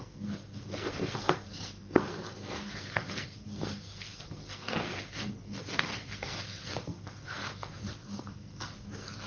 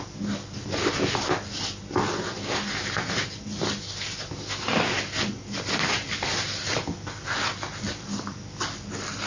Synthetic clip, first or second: first